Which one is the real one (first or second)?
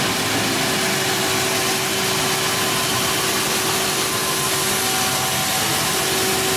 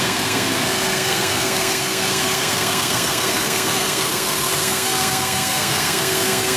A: first